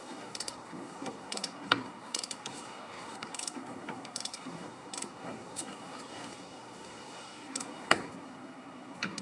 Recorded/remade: remade